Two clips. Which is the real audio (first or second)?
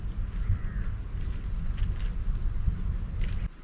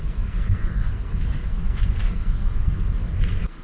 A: first